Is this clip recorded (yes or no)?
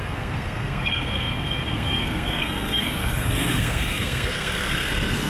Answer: no